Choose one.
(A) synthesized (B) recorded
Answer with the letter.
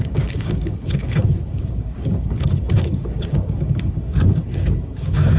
A